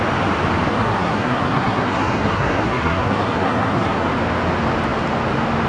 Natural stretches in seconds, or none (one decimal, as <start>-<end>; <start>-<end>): 0.0-0.7; 4.1-5.7